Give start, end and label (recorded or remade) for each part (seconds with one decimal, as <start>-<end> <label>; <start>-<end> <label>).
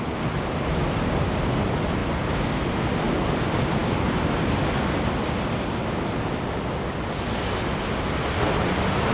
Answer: 0.0-9.1 recorded